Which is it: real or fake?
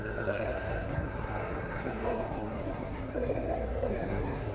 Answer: fake